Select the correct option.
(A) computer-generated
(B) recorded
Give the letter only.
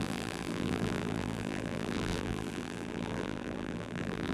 A